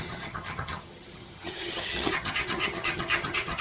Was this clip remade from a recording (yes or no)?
yes